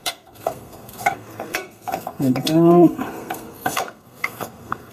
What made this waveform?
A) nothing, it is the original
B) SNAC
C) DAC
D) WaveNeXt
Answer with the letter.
B